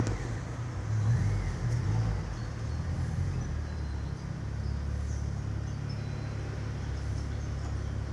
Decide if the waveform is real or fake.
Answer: real